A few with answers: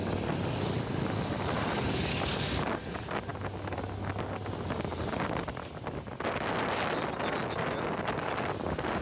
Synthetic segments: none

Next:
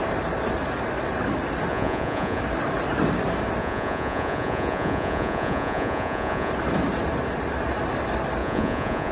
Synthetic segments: 1.7-2.4 (vocoder, Vocos); 3.6-6.5; 8.4-9.1

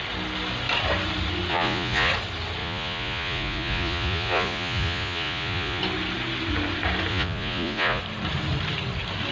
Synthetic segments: 1.5-2.1 (vocoder, Vocos); 2.6-5.8; 7.1-8.0

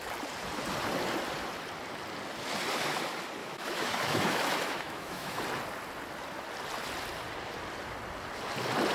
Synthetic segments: 3.4-5.4 (autoencoder, DAC-VAE)

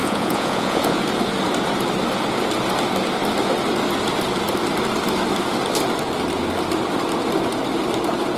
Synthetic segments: 0.0-1.0 (vocoder, Vocos)

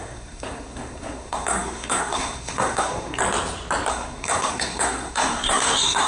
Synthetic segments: 0.0-3.2 (codec, SNAC); 3.9-6.1